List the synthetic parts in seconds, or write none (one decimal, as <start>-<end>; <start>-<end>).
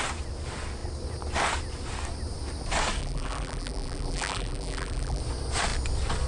3.0-5.2